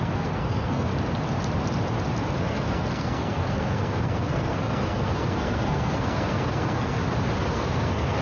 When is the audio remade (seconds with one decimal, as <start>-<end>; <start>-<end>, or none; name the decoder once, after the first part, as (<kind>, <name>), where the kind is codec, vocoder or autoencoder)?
0.0-0.9 (codec, SNAC); 2.4-7.0; 7.5-8.2